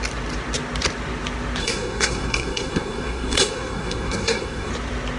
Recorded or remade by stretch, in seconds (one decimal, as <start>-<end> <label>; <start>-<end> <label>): 0.0-1.6 recorded; 1.6-4.7 remade; 4.7-5.2 recorded